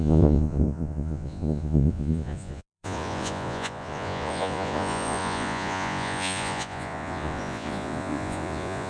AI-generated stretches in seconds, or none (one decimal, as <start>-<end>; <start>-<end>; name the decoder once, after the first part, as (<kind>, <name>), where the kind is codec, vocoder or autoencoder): 0.0-8.9 (vocoder, Vocos)